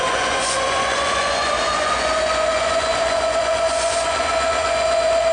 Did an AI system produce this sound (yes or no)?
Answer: yes